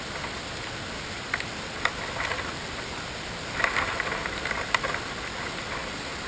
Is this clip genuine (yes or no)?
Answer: yes